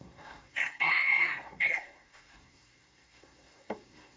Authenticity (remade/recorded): remade